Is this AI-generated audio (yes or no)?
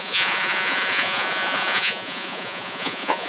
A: yes